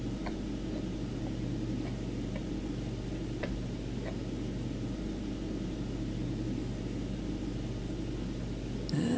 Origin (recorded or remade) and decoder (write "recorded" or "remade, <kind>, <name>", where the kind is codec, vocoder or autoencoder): recorded